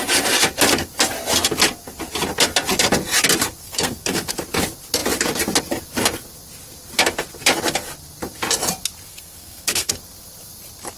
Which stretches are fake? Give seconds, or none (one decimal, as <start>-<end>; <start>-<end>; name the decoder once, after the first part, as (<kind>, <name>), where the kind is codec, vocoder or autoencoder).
3.6-4.3 (codec, SNAC); 9.1-9.9